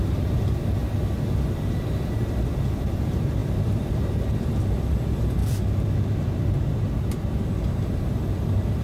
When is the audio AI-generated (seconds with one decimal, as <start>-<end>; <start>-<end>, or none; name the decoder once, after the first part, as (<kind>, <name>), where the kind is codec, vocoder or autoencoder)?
0.0-0.8 (vocoder, BigVGAN v2); 1.5-8.8